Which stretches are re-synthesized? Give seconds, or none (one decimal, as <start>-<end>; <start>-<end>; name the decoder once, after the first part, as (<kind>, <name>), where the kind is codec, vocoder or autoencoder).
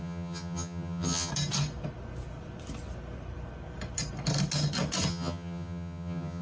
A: 0.0-1.3 (vocoder, HiFi-GAN); 5.1-6.4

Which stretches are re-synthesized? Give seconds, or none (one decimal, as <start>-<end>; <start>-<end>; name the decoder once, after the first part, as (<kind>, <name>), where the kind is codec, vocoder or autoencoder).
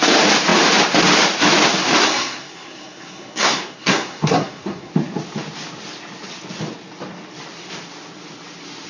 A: 2.0-4.9 (codec, SNAC)